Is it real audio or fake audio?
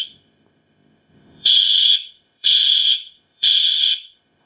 fake